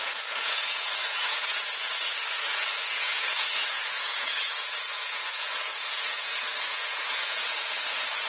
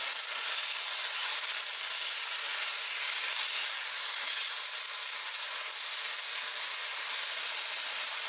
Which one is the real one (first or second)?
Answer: second